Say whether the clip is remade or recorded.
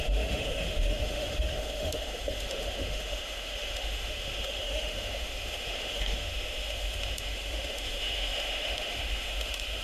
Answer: remade